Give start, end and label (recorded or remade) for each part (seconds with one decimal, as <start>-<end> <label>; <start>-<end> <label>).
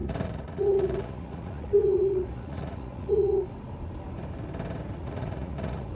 0.0-3.5 remade; 3.5-5.0 recorded; 5.0-5.9 remade